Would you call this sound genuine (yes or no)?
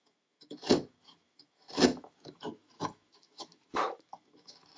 no